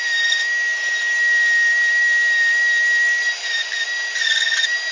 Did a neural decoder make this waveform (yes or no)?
no